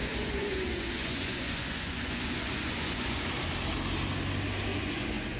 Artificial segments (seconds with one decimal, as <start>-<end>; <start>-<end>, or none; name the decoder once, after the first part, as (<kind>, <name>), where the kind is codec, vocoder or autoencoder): 0.0-3.2 (vocoder, Vocos); 4.7-5.4